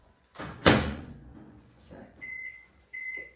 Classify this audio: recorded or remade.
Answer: remade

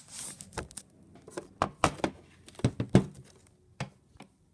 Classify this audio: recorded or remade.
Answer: recorded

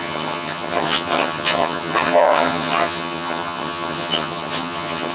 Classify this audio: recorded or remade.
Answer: remade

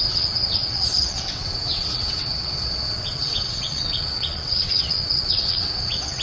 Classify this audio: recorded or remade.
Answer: remade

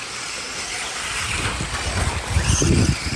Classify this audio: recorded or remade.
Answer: recorded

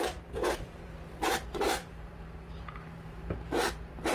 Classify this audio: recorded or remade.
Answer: remade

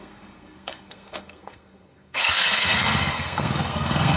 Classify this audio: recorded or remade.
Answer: remade